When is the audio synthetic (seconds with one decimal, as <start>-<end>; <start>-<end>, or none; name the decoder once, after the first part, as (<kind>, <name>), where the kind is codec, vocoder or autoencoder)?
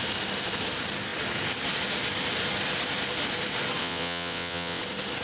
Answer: 3.8-4.8 (vocoder, WaveNeXt)